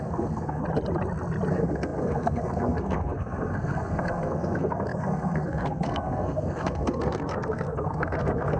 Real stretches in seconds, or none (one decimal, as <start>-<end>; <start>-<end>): 0.6-1.5